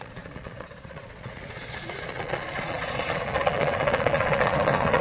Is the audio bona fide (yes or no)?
no